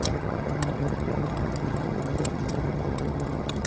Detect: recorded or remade remade